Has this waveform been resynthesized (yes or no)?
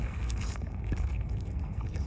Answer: yes